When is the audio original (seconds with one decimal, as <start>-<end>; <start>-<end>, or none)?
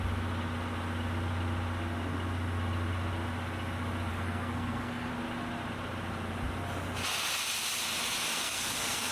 0.0-4.1; 5.1-8.3